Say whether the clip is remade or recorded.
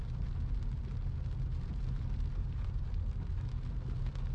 recorded